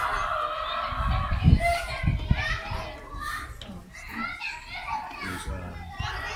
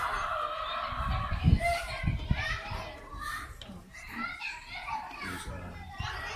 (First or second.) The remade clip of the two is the second